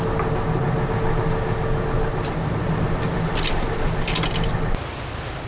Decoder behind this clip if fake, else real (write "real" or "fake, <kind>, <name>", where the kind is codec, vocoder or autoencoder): real